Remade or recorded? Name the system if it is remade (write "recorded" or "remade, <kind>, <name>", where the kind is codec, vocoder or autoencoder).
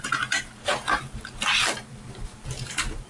remade, vocoder, BigVGAN v2